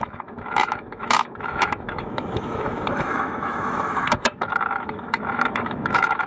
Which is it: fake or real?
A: fake